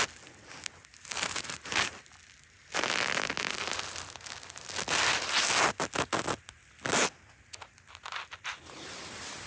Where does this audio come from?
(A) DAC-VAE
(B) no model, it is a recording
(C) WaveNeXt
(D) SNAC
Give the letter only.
B